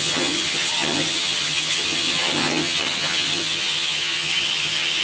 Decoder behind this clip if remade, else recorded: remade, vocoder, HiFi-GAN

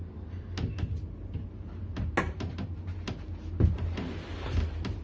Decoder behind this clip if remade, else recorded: recorded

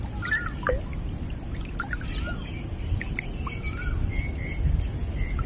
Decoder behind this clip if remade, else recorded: recorded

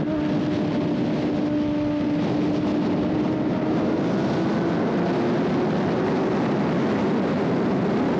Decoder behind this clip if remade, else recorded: recorded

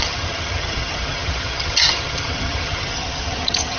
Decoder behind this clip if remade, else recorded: remade, vocoder, HiFi-GAN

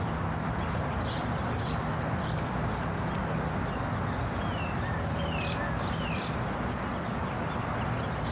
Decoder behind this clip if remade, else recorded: recorded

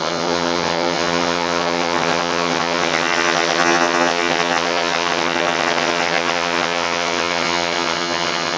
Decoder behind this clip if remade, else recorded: remade, vocoder, HiFi-GAN